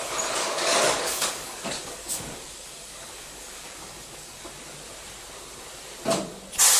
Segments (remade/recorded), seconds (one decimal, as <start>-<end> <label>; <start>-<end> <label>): 0.0-0.4 recorded; 0.4-4.5 remade; 4.5-6.8 recorded

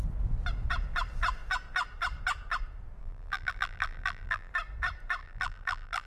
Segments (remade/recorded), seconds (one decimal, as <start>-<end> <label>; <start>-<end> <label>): 0.0-3.0 recorded; 3.0-4.5 remade; 4.5-5.2 recorded; 5.2-6.1 remade